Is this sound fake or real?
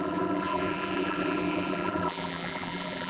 fake